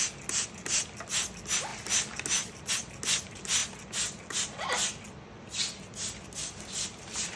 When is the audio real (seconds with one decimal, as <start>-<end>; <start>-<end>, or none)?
0.0-7.4